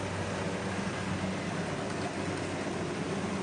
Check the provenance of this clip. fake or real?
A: real